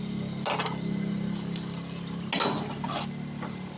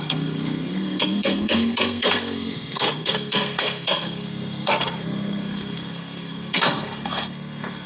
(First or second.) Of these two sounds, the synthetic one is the second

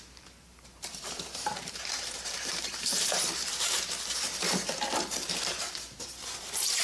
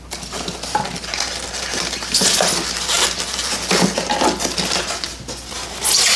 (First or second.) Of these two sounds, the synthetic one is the first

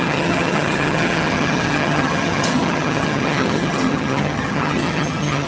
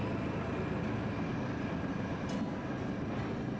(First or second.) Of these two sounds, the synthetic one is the first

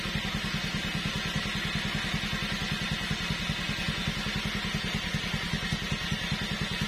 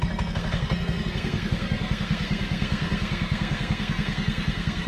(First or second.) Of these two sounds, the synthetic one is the second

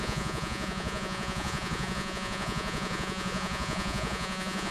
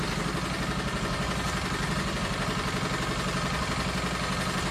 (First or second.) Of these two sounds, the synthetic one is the first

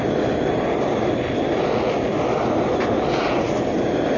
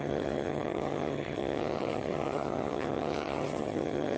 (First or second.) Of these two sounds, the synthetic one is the second